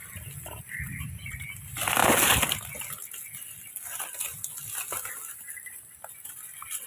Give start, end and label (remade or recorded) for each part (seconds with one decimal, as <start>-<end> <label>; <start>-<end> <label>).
0.0-6.9 recorded